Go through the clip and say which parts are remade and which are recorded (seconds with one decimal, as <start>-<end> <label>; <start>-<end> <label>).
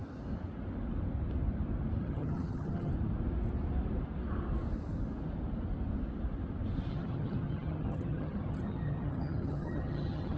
0.0-2.0 recorded; 2.0-2.9 remade; 2.9-6.9 recorded; 6.9-10.4 remade